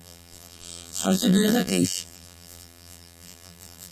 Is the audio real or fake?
fake